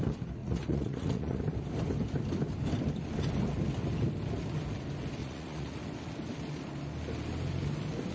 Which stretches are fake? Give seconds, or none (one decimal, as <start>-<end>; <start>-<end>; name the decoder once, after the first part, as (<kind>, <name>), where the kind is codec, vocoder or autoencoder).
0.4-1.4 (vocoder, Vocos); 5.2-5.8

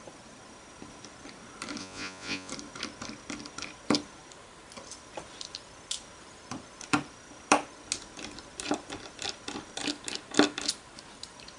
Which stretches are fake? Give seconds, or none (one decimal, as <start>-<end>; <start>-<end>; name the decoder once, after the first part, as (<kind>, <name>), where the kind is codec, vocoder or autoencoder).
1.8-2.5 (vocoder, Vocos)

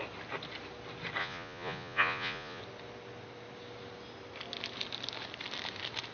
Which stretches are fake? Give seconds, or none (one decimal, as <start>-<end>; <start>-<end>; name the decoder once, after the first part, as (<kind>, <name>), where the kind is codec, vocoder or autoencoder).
1.2-2.6 (vocoder, Vocos)

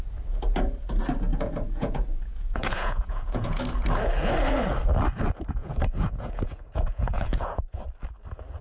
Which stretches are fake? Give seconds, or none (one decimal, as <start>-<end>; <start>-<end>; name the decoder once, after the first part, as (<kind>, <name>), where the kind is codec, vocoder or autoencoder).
1.3-3.6 (vocoder, Vocos); 5.6-7.8

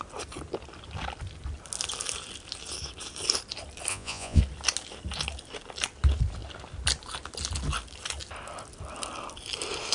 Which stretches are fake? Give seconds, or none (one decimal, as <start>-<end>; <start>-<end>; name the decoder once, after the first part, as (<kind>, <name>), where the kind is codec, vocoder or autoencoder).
3.9-4.4 (vocoder, Vocos)

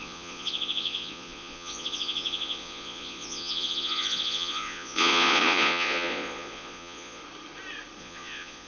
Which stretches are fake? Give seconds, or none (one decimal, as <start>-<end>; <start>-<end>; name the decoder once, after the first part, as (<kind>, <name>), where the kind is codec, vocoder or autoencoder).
0.0-7.2 (vocoder, Vocos); 8.0-8.7

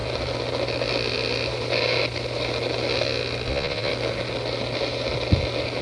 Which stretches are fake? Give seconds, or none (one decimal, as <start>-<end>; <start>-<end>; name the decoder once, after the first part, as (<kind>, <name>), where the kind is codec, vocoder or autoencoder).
3.5-3.9 (vocoder, Vocos)

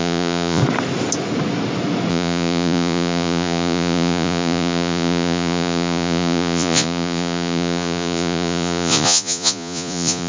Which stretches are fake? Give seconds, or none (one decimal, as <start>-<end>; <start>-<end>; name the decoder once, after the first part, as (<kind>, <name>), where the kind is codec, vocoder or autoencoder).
0.0-0.6 (vocoder, Vocos); 2.1-10.3